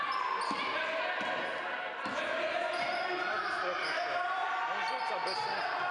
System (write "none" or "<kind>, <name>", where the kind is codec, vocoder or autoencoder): none